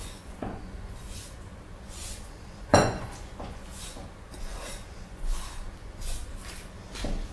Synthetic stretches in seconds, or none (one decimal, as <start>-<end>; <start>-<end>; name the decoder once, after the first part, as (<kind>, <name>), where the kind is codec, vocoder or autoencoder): 0.0-6.4 (vocoder, Vocos)